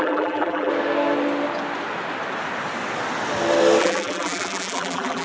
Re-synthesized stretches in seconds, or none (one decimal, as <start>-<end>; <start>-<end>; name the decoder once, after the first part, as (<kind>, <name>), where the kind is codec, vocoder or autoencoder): 0.0-0.7 (vocoder, BigVGAN v2); 3.8-5.2